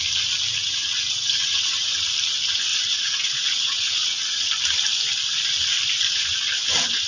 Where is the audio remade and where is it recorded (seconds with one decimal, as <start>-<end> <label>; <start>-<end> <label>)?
0.0-0.5 recorded; 0.5-2.1 remade; 2.1-2.7 recorded; 2.7-4.5 remade; 4.5-7.1 recorded